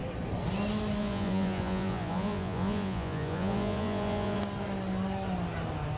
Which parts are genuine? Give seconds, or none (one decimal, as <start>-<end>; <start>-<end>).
0.0-1.0; 4.4-6.0